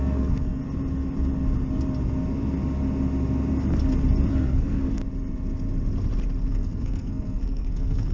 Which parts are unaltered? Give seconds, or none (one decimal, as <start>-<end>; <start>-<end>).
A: 0.6-4.3; 5.0-6.5